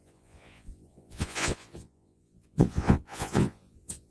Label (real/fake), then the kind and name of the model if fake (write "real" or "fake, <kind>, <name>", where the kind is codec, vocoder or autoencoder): fake, vocoder, Vocos